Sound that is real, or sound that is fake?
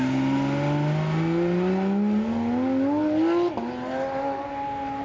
real